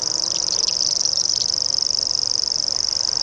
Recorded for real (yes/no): no